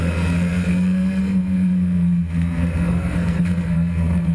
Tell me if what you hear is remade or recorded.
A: remade